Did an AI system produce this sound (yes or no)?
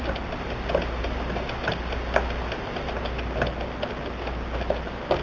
no